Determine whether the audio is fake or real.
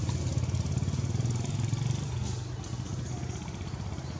real